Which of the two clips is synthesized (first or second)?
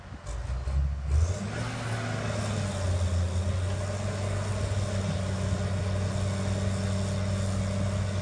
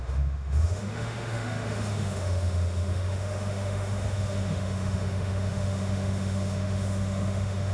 second